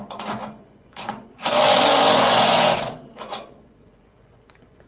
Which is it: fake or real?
fake